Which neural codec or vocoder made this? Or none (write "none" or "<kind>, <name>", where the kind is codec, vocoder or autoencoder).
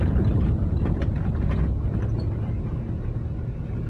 none